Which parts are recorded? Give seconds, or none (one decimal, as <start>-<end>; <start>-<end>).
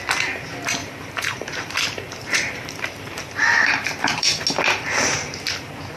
0.0-0.8; 4.4-6.0